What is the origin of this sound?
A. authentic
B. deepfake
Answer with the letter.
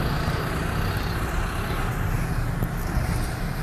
A